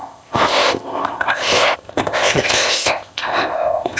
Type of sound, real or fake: fake